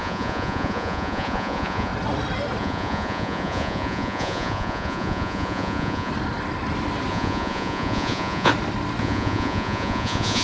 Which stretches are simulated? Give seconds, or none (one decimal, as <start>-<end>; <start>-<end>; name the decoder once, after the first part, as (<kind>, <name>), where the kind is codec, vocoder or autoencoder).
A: 0.0-1.9 (vocoder, Vocos); 2.6-6.1; 7.1-8.5; 9.0-10.4